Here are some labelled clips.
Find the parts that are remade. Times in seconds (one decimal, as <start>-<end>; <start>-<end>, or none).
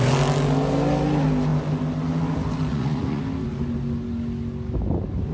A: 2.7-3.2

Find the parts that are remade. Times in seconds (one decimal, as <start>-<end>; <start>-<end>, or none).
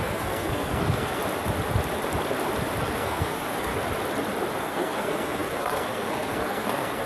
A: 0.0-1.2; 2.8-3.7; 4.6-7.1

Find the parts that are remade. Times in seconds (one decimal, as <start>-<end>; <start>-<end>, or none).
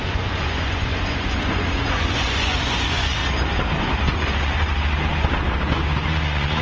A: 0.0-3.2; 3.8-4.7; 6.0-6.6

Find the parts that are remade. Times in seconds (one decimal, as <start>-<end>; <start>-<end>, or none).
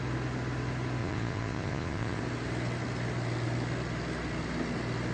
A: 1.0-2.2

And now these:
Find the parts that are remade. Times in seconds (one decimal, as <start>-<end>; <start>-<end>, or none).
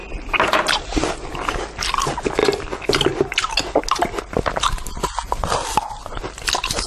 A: none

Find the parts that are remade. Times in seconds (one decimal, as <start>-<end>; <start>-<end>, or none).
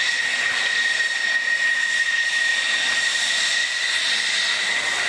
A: none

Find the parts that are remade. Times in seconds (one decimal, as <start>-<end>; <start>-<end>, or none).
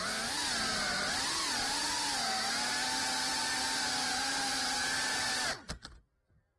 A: none